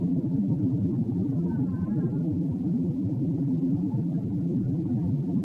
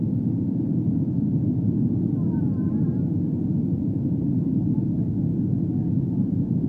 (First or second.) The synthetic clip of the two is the first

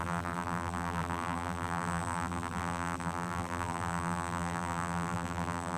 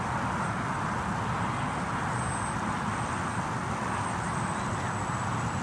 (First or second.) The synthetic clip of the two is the first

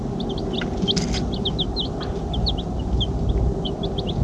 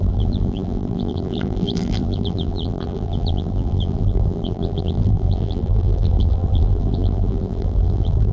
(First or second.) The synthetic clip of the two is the second